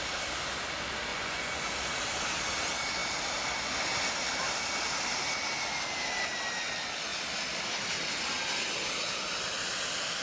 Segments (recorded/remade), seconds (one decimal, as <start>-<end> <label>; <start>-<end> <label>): 0.0-1.1 recorded; 1.1-1.7 remade; 1.7-10.2 recorded